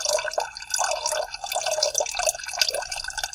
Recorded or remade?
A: recorded